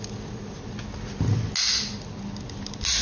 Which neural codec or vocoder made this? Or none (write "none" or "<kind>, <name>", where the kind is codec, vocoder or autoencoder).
none